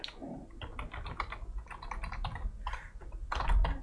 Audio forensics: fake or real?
real